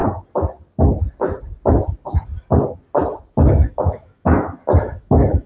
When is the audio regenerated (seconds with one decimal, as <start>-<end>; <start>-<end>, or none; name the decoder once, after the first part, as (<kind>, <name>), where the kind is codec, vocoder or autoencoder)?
3.3-5.5 (autoencoder, DAC-VAE)